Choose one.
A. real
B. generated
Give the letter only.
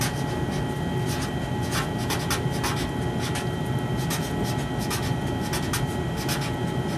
A